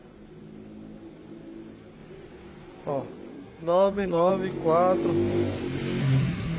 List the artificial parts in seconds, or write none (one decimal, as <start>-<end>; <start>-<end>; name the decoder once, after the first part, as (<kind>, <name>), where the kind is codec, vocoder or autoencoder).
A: 3.3-4.3 (codec, SNAC); 6.0-6.6